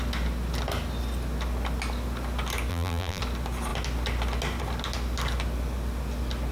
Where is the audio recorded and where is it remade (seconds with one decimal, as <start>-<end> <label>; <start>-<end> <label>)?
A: 0.0-2.7 recorded; 2.7-3.2 remade; 3.2-6.5 recorded